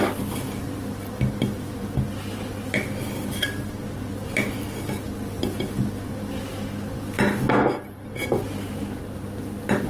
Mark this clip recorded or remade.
recorded